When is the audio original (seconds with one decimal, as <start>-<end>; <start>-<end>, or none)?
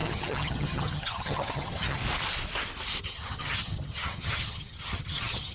2.0-3.0